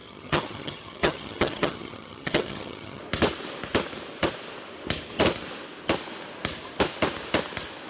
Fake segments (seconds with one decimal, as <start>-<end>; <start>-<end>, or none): 0.0-3.0